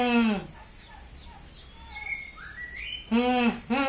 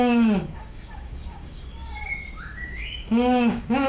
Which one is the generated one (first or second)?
second